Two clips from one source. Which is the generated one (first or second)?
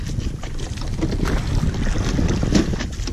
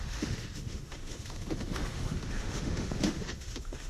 second